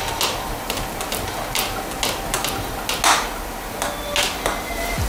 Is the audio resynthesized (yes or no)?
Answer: no